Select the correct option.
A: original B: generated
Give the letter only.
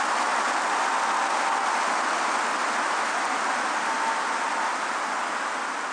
A